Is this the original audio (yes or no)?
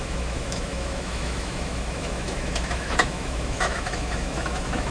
no